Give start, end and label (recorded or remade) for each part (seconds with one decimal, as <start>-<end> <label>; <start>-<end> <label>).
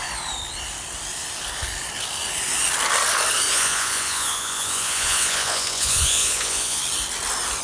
0.0-3.5 recorded; 3.5-6.8 remade; 6.8-7.6 recorded